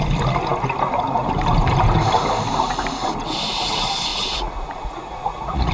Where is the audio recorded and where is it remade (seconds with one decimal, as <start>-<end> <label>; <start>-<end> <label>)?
0.0-4.1 recorded; 4.1-5.7 remade